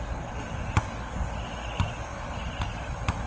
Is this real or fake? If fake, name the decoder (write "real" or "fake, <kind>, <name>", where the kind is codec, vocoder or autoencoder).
real